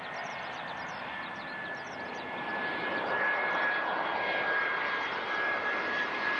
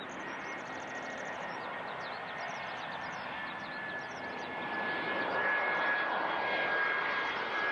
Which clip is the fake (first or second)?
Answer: first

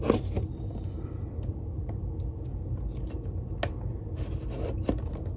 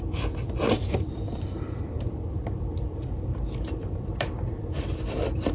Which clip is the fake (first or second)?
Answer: second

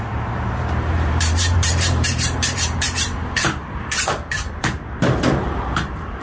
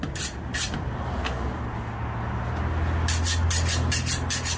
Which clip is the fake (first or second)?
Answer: first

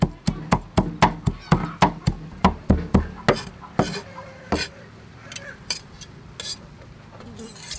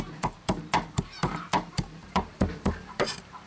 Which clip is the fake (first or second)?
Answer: second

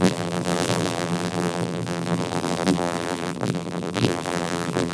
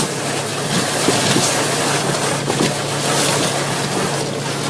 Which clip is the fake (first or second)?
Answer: first